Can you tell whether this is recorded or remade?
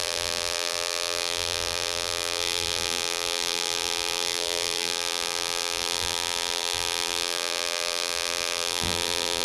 remade